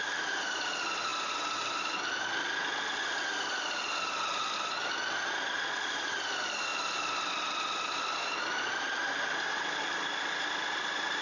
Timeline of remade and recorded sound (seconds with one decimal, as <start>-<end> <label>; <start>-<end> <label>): 0.0-11.2 recorded